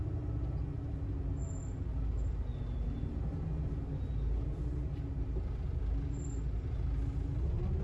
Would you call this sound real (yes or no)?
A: yes